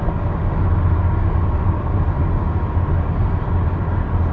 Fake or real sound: real